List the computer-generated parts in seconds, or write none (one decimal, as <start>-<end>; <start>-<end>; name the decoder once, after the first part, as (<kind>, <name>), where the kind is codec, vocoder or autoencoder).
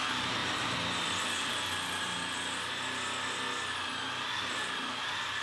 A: 0.4-1.5 (vocoder, BigVGAN v2)